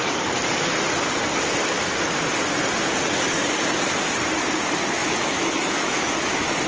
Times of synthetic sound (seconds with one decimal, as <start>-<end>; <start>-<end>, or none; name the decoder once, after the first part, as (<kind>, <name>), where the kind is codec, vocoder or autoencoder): 5.0-6.7 (autoencoder, DAC-VAE)